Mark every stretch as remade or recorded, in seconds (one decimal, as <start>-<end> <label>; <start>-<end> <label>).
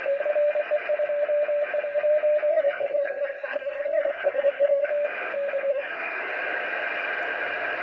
0.0-2.5 recorded; 2.5-4.9 remade; 4.9-5.7 recorded; 5.7-6.2 remade; 6.2-7.8 recorded